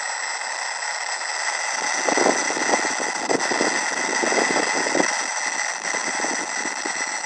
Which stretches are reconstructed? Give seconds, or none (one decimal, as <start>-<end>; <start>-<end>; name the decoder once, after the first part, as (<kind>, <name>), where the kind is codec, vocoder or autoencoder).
none